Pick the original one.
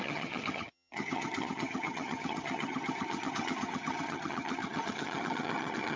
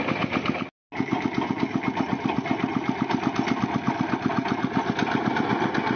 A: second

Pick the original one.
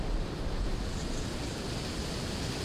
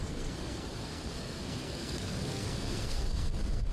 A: first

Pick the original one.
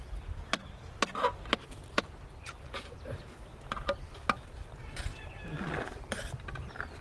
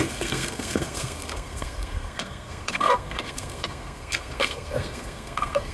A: first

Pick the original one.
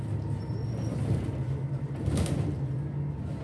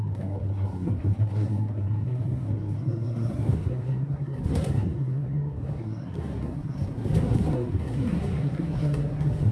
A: first